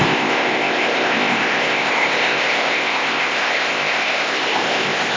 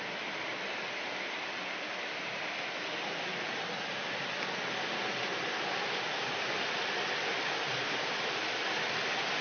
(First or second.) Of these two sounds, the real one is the second